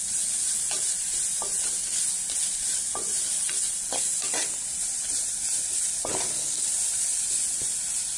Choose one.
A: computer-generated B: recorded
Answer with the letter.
B